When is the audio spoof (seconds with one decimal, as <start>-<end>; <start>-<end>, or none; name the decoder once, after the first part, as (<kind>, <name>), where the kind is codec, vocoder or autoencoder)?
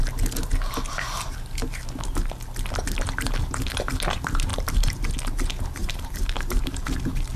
4.5-5.1 (vocoder, BigVGAN v2); 5.8-6.8